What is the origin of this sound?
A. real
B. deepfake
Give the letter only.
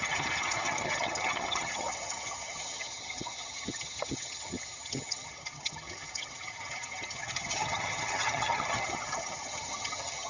B